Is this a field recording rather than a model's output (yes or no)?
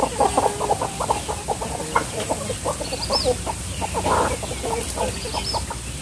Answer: yes